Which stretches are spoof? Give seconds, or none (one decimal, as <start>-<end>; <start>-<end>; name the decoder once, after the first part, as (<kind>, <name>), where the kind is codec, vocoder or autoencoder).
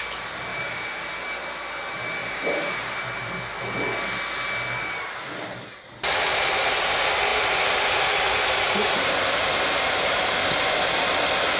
0.5-1.1 (vocoder, BigVGAN v2); 2.2-3.0; 7.3-10.3